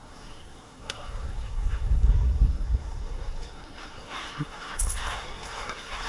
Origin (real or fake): fake